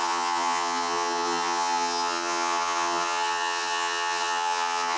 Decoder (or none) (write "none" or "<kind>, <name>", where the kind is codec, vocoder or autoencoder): vocoder, HiFi-GAN